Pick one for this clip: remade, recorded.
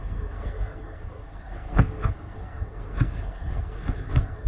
remade